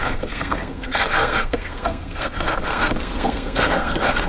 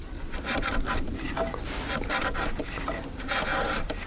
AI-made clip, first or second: first